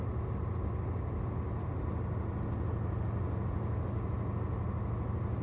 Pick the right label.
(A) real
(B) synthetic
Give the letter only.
A